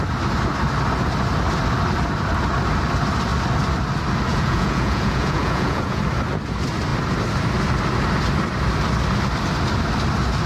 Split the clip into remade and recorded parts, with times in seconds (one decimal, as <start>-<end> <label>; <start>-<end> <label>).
0.0-4.3 recorded; 4.3-6.0 remade; 6.0-10.5 recorded